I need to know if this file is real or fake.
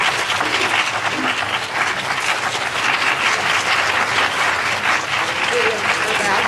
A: real